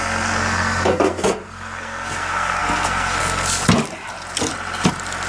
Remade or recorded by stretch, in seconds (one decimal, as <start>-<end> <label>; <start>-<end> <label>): 0.0-3.6 remade; 3.6-5.3 recorded